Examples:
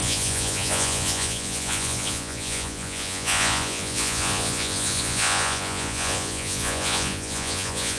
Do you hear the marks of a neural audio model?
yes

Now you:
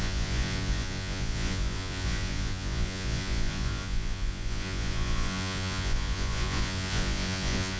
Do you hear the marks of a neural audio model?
yes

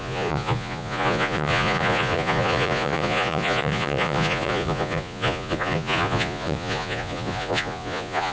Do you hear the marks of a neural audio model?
yes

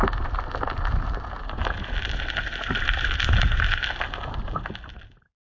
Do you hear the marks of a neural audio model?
no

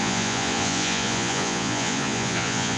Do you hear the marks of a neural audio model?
yes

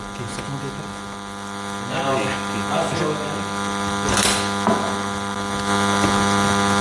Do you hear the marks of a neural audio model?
no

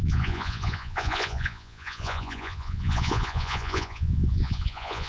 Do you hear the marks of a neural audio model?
yes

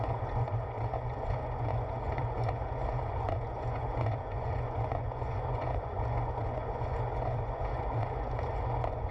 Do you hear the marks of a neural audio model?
yes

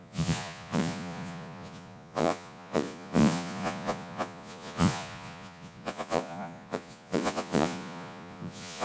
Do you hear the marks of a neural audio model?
yes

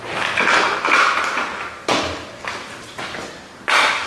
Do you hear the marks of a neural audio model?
no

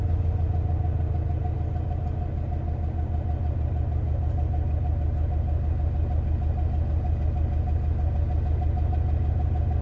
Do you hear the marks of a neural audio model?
no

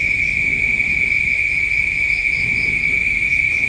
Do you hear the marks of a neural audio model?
no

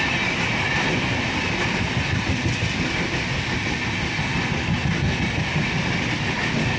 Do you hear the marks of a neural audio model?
no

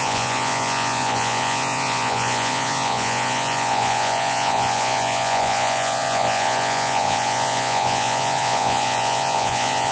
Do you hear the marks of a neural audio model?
yes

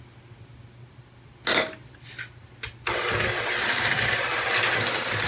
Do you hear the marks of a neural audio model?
no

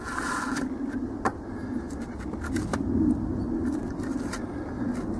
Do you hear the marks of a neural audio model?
no